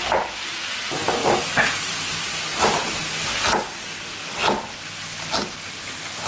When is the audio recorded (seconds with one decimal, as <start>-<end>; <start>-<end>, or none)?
0.0-6.3